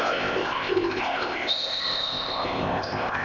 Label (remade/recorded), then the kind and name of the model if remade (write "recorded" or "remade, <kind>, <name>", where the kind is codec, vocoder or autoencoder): remade, codec, ZipCodec